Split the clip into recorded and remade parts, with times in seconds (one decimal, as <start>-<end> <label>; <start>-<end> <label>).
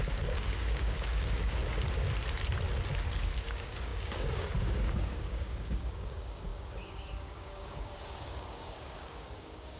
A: 0.0-1.6 remade; 1.6-3.1 recorded; 3.1-9.8 remade